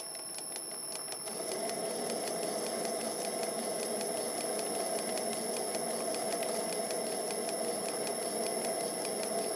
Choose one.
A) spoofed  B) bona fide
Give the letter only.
B